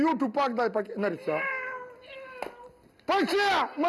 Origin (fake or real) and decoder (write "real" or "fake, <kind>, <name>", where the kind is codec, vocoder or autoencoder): real